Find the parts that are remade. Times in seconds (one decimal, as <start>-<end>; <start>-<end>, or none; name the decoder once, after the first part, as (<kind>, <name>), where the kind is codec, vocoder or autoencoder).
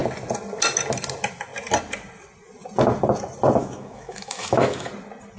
3.6-4.9 (autoencoder, DAC-VAE)